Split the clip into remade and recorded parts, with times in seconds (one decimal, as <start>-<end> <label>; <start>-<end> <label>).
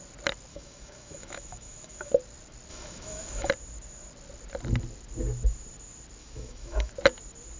0.0-0.5 recorded; 0.5-2.1 remade; 2.1-2.7 recorded; 2.7-3.5 remade; 3.5-6.2 recorded; 6.2-6.9 remade; 6.9-7.6 recorded